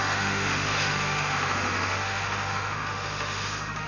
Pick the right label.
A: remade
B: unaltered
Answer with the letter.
A